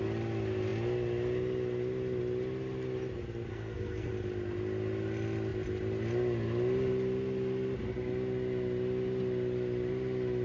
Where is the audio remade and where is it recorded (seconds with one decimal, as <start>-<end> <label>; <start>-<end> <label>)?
0.0-3.5 recorded; 3.5-4.1 remade; 4.1-10.4 recorded